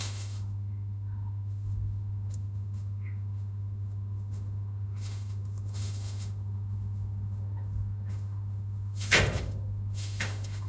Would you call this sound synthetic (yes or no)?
yes